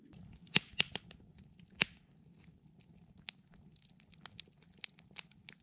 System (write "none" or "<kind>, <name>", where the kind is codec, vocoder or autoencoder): none